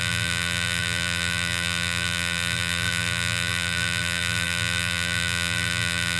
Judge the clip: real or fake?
fake